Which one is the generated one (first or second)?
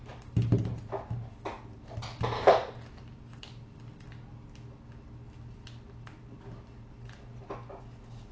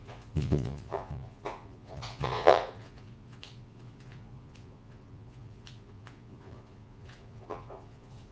second